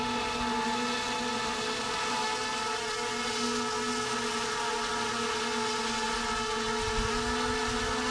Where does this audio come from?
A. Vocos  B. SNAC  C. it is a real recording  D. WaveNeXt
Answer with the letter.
C